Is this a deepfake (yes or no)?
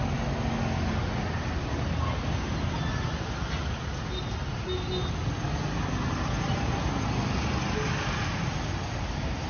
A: no